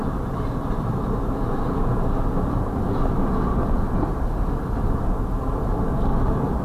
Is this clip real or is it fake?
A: real